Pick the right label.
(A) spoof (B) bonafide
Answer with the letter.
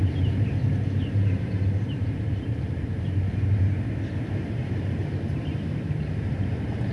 A